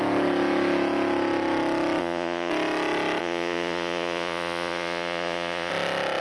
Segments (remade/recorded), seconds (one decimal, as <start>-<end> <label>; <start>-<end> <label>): 0.0-2.0 recorded; 2.0-2.5 remade; 2.5-3.2 recorded; 3.2-5.7 remade; 5.7-6.2 recorded